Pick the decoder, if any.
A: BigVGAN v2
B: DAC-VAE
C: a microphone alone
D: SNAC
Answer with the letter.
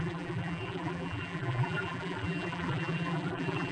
A